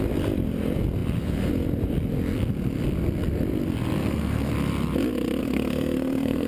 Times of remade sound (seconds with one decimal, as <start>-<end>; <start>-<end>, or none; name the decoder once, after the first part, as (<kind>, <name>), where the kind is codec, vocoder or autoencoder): 4.0-4.5 (codec, SNAC); 5.4-6.5